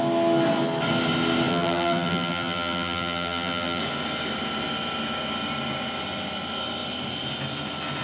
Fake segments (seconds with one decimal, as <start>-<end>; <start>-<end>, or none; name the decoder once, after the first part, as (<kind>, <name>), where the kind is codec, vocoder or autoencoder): 1.5-3.8 (vocoder, BigVGAN v2)